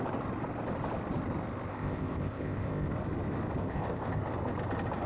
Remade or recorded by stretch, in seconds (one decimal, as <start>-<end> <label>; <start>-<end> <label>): 0.0-1.7 recorded; 1.7-2.9 remade; 2.9-3.6 recorded; 3.6-4.2 remade; 4.2-5.1 recorded